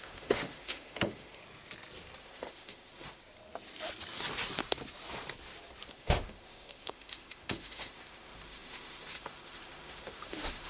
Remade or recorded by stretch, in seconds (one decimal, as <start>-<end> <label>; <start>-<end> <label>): 0.0-1.4 remade; 1.4-2.2 recorded; 2.2-3.2 remade; 3.2-5.9 recorded; 5.9-10.7 remade